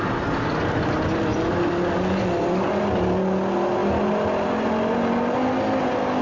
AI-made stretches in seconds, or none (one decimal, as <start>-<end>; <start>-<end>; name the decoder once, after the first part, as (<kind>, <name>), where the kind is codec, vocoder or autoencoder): none